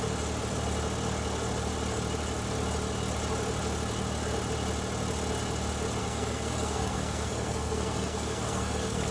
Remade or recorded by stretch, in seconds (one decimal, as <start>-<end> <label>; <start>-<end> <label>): 0.0-6.0 recorded; 6.0-9.1 remade